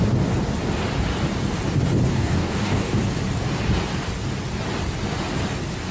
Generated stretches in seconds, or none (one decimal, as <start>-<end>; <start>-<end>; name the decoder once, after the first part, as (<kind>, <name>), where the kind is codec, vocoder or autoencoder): 2.1-3.0 (codec, DAC)